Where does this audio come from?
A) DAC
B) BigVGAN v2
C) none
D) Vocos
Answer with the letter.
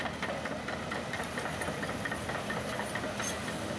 C